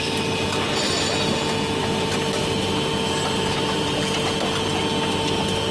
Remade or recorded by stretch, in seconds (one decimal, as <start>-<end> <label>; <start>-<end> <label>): 0.0-1.8 recorded; 1.8-4.0 remade; 4.0-5.7 recorded